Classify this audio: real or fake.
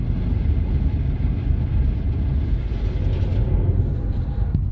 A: real